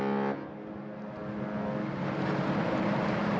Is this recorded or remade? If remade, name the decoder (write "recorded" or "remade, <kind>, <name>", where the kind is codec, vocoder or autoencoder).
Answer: recorded